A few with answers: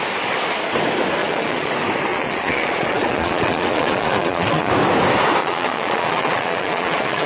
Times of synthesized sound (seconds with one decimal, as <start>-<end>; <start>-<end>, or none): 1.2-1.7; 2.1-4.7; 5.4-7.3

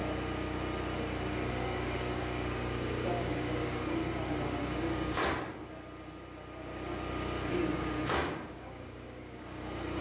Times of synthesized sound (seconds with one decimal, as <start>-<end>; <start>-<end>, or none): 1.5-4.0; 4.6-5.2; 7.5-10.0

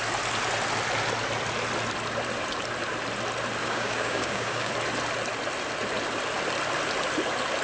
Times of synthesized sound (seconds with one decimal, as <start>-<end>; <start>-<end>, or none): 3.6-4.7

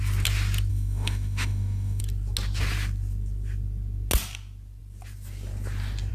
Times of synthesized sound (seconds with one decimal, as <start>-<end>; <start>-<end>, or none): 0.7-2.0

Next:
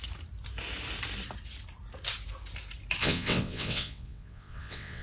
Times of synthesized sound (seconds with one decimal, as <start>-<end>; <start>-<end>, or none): 3.0-5.0

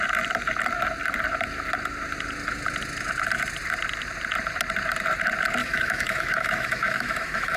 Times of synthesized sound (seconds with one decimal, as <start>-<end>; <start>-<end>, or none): 5.6-7.6

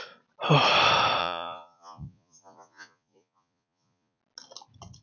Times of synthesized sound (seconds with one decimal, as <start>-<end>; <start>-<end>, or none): 1.2-4.2